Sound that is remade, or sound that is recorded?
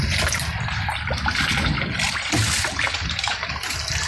recorded